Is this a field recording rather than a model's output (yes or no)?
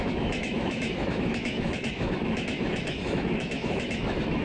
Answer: no